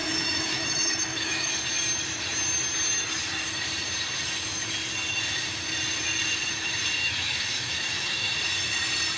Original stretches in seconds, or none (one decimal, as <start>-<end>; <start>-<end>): 1.5-7.0; 8.3-9.2